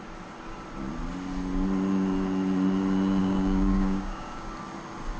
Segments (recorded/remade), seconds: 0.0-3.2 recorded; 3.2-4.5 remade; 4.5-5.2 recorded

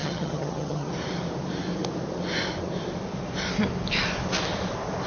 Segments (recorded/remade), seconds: 0.0-0.9 remade; 0.9-5.1 recorded

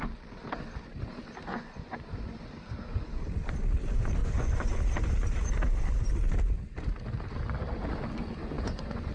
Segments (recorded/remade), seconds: 0.0-1.5 recorded; 1.5-2.1 remade; 2.1-4.2 recorded; 4.2-4.8 remade; 4.8-8.4 recorded; 8.4-9.1 remade

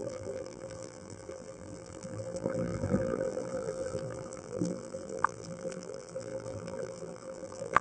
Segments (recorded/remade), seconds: 0.0-7.8 remade

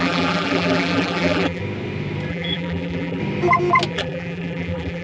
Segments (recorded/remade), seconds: 0.0-1.6 remade; 1.6-2.3 recorded; 2.3-3.2 remade; 3.2-3.9 recorded; 3.9-5.0 remade

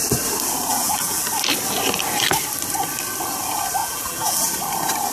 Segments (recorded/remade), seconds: 0.0-0.7 recorded; 0.7-1.2 remade; 1.2-3.8 recorded; 3.8-4.5 remade; 4.5-5.1 recorded

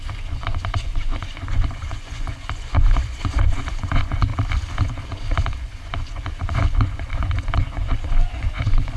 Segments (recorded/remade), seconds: 0.0-4.3 remade; 4.3-4.8 recorded; 4.8-9.0 remade